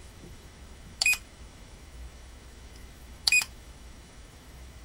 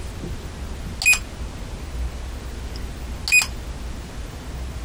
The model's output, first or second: first